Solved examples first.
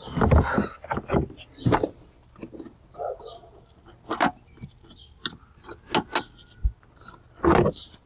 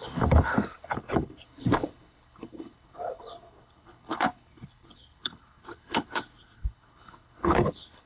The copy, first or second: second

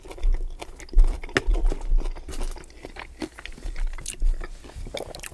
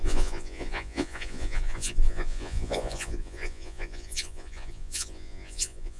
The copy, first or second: second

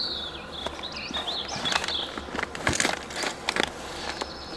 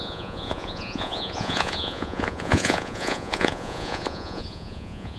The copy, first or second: second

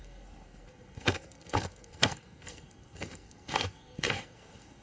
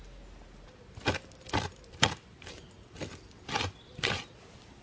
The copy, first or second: first